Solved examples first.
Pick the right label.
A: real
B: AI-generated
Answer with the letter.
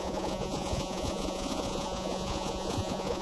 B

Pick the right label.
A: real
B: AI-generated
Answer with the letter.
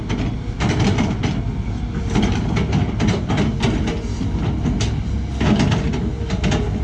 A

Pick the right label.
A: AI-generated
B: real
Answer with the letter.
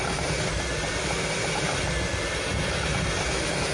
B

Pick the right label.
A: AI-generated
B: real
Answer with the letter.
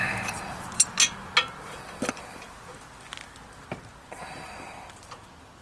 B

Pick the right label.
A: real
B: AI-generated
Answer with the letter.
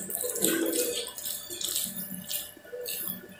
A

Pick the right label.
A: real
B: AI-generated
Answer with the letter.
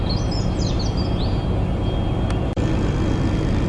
A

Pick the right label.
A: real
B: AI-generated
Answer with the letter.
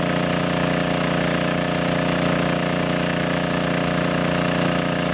A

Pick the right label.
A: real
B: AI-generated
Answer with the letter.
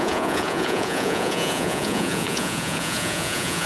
B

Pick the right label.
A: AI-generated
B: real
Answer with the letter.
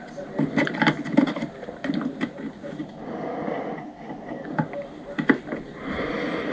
B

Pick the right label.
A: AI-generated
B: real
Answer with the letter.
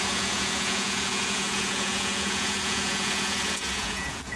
A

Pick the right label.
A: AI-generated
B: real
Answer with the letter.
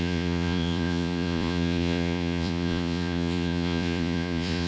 A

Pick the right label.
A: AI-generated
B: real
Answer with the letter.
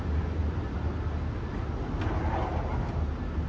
B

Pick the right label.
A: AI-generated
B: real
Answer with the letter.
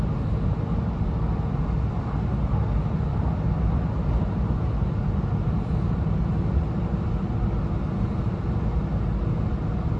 B